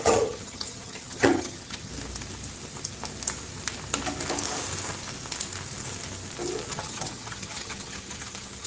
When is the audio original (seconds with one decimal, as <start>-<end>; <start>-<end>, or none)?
1.9-6.7